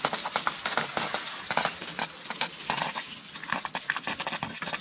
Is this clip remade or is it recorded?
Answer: recorded